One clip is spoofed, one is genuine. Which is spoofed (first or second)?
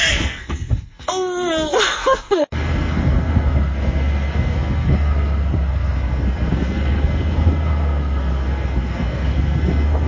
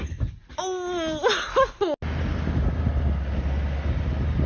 first